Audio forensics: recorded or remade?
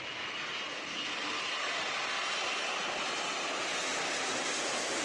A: recorded